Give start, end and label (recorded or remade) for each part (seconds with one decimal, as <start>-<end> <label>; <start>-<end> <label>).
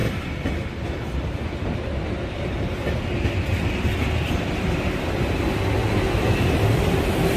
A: 0.0-7.4 recorded